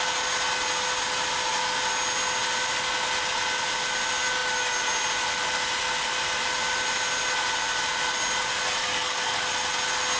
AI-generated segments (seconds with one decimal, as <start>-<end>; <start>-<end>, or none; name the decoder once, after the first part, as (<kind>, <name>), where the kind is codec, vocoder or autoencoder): 8.8-9.4 (codec, DAC)